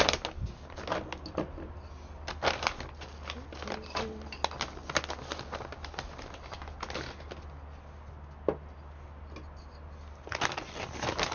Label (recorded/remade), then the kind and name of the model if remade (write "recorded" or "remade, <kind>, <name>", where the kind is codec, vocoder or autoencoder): recorded